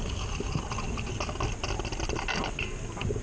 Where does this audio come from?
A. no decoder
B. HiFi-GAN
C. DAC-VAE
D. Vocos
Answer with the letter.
A